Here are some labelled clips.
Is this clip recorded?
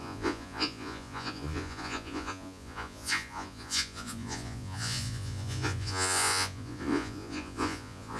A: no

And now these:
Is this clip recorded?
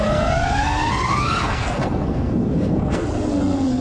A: no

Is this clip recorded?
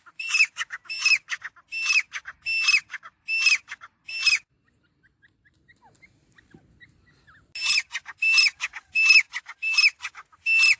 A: yes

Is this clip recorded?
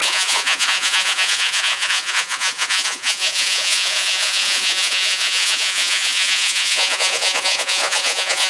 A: no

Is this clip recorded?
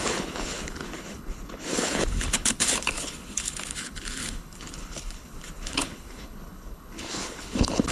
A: no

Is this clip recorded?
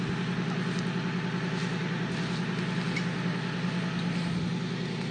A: yes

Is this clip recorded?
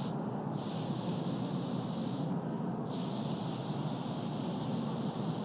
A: yes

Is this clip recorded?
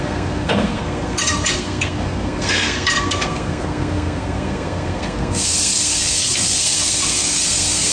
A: no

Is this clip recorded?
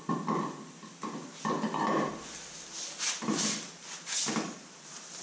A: yes